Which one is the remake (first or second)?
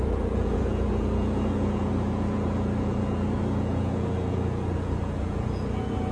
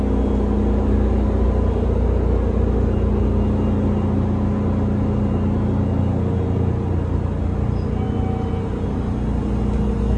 first